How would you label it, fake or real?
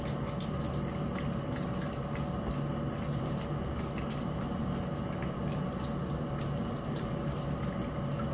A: real